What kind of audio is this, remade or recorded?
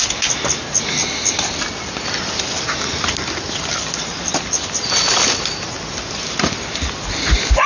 recorded